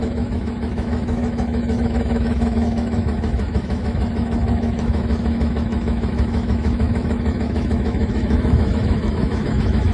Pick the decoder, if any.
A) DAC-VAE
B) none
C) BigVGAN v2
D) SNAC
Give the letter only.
A